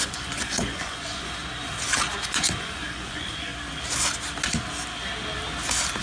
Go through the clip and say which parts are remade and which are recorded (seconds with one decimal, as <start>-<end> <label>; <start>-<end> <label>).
0.0-1.4 remade; 1.4-2.3 recorded; 2.3-3.5 remade; 3.5-6.0 recorded